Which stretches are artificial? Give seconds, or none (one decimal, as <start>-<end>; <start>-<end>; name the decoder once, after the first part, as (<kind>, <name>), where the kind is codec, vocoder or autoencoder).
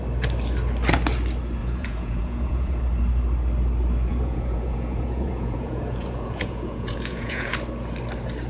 1.6-2.8 (vocoder, Vocos); 4.1-7.5